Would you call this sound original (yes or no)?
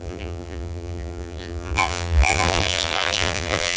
no